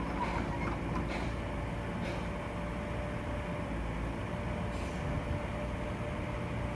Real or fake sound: real